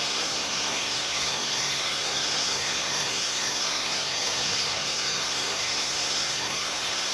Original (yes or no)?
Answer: no